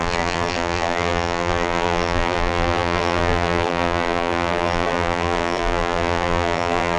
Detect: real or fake fake